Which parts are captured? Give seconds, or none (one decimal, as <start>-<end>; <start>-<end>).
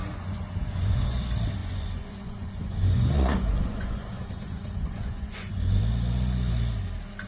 1.2-1.6; 5.8-7.3